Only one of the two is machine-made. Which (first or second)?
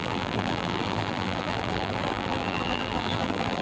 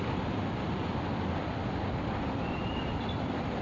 first